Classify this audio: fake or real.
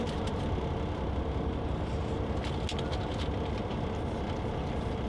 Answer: real